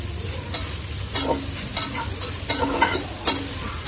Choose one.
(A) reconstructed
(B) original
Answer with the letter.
B